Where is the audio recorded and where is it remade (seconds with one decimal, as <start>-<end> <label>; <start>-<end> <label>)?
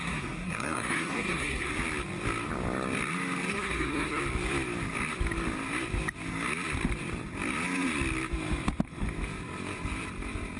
0.0-1.7 remade; 1.7-3.5 recorded; 3.5-4.2 remade; 4.2-10.6 recorded